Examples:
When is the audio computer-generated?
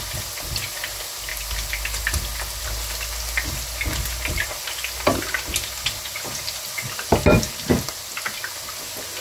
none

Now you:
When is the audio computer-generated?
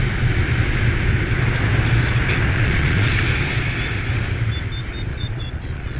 2.5-3.1; 5.1-6.0